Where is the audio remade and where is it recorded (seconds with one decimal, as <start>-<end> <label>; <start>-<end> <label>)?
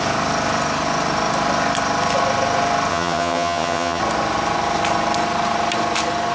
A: 0.0-2.9 recorded; 2.9-4.0 remade; 4.0-6.3 recorded